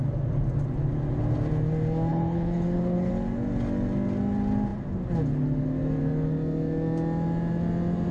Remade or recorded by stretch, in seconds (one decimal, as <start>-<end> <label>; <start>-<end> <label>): 0.0-2.1 recorded; 2.1-3.1 remade; 3.1-8.1 recorded